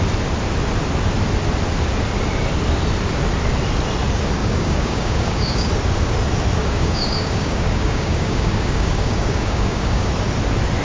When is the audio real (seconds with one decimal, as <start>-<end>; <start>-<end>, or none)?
0.0-4.4; 5.7-6.6; 10.1-10.8

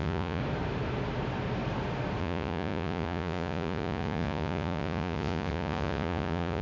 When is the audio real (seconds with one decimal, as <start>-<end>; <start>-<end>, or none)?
0.4-2.2

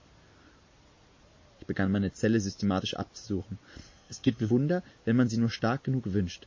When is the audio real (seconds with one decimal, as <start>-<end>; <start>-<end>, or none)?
0.0-3.8; 4.5-6.5

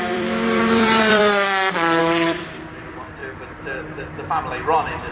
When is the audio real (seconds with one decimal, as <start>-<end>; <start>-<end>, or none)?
1.2-2.0; 3.2-4.3

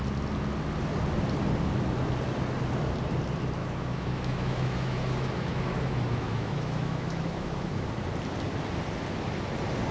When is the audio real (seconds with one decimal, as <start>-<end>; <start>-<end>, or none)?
0.0-3.6; 7.9-9.9